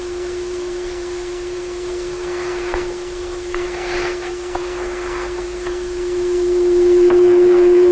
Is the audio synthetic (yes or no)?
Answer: yes